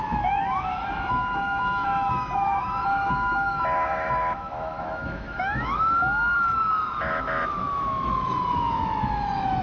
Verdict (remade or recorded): remade